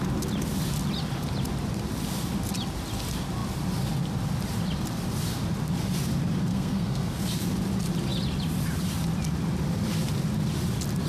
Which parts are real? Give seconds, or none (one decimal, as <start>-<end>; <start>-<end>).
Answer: 0.0-6.5; 7.3-11.1